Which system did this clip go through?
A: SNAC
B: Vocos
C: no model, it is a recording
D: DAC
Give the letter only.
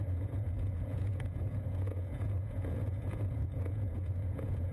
B